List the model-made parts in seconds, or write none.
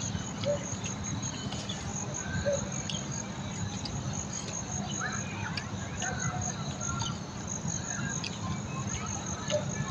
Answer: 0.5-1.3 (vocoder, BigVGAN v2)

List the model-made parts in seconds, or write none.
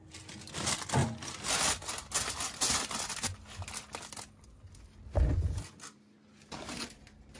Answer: none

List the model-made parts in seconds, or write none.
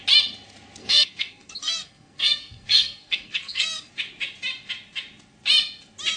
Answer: 0.8-3.9 (codec, SNAC)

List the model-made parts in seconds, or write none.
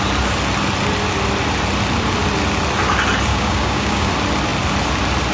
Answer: 3.3-4.1 (codec, DAC)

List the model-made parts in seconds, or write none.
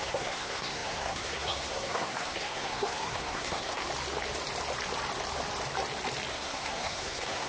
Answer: 0.0-3.8 (codec, SNAC); 6.3-7.5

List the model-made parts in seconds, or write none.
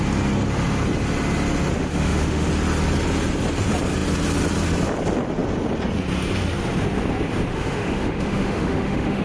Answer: 1.8-2.5 (autoencoder, DAC-VAE); 7.5-9.2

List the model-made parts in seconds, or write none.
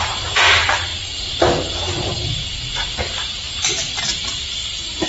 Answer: 0.0-0.9 (vocoder, BigVGAN v2); 4.0-5.1